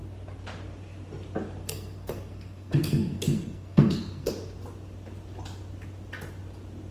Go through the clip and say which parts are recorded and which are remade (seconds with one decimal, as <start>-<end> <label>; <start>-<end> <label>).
0.0-1.6 recorded; 1.6-4.3 remade; 4.3-6.9 recorded